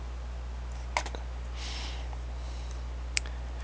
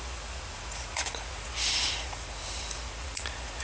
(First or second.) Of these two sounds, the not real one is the second